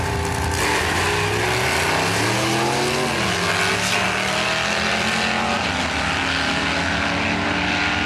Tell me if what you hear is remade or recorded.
recorded